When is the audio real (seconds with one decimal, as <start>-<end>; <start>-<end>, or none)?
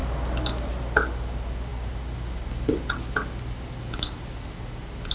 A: 0.0-5.1